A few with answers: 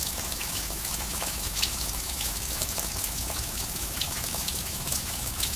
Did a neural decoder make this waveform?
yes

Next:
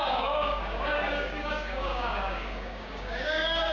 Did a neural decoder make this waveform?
yes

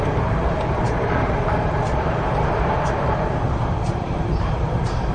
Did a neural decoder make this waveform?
yes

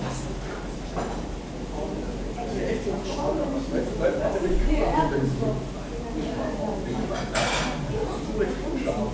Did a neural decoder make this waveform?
no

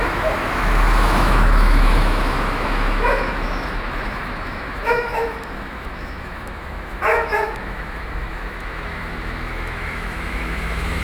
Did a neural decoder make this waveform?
yes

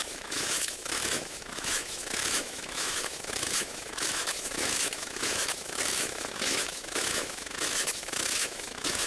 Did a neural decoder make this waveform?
yes